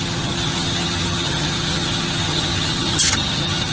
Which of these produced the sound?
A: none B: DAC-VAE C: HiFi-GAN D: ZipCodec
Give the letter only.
C